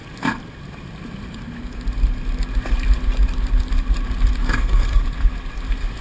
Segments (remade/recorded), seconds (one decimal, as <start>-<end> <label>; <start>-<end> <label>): 0.0-4.4 recorded; 4.4-5.0 remade; 5.0-6.0 recorded